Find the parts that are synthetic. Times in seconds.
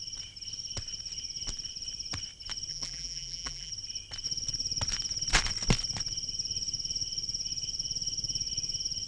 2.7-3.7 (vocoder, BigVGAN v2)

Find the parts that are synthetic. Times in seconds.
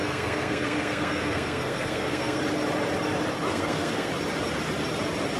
0.0-2.4 (codec, SNAC); 3.5-4.1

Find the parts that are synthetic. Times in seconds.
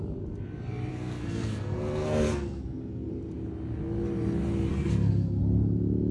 0.9-3.1 (codec, SNAC); 4.7-5.4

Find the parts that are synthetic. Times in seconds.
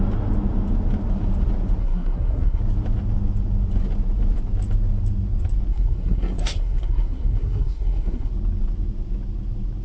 1.8-2.6 (codec, SNAC); 5.7-8.3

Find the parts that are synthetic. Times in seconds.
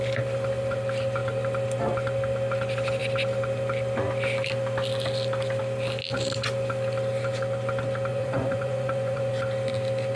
8.1-9.3 (vocoder, Vocos)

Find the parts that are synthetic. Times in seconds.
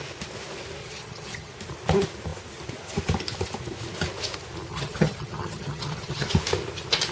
0.8-1.5 (vocoder, HiFi-GAN); 4.7-6.3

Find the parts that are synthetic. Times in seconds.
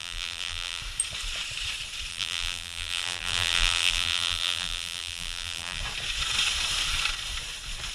0.0-0.8 (vocoder, BigVGAN v2); 2.1-5.8